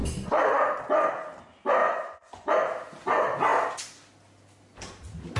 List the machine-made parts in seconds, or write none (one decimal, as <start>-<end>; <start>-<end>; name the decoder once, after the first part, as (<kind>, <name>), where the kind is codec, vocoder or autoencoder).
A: 1.8-2.5 (vocoder, Vocos)